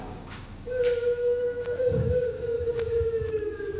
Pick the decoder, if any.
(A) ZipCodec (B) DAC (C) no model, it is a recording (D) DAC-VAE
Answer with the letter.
B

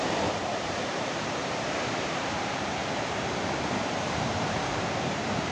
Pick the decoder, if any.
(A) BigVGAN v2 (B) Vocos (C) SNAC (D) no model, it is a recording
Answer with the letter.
A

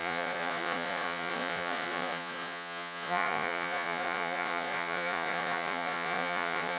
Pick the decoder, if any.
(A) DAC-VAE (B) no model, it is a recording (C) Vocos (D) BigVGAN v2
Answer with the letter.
C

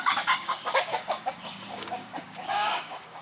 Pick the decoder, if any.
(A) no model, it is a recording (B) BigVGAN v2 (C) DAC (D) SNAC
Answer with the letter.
C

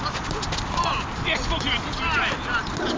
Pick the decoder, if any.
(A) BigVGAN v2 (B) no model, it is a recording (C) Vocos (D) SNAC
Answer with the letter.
B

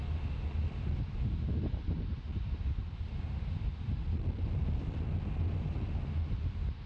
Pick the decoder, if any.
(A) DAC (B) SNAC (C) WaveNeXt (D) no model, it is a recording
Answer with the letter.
D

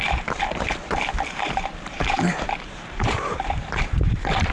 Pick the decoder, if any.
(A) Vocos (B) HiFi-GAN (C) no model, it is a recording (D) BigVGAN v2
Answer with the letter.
D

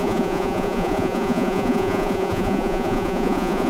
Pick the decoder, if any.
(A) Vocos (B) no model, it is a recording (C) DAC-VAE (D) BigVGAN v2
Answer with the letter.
A